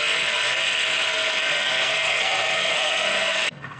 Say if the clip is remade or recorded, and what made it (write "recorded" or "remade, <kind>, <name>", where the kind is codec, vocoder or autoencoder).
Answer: remade, codec, SNAC